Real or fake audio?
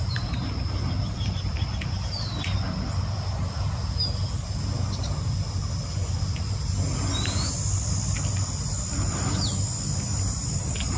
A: real